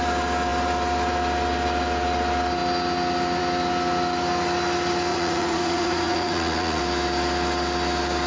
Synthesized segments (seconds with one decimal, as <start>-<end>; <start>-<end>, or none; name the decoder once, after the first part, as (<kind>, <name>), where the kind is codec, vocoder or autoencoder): 5.1-6.8 (vocoder, Vocos)